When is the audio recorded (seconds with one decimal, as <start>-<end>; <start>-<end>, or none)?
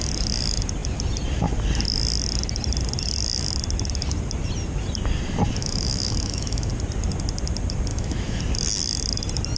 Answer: 0.0-5.6; 6.7-7.9; 8.4-9.6